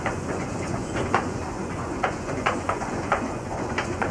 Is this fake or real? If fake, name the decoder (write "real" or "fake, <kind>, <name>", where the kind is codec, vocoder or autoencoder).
fake, vocoder, Vocos